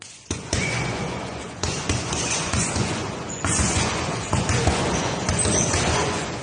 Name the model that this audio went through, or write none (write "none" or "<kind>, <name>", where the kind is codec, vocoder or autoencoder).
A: vocoder, Vocos